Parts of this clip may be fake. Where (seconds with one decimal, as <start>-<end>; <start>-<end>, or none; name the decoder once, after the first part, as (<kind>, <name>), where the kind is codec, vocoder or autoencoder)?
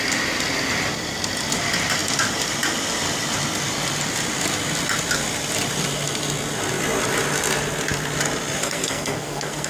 8.6-9.7 (codec, SNAC)